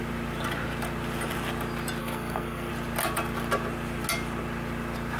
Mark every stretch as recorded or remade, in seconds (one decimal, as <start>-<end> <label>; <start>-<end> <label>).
0.0-2.0 recorded; 2.0-2.7 remade; 2.7-5.2 recorded